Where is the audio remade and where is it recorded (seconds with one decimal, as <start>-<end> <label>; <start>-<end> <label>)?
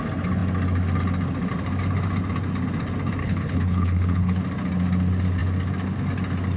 0.0-3.2 recorded; 3.2-4.4 remade; 4.4-6.6 recorded